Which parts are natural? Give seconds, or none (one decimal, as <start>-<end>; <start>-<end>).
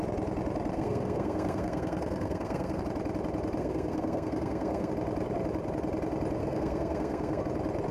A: 0.0-0.7; 2.8-3.6; 4.9-6.4; 7.4-7.9